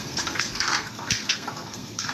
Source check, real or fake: fake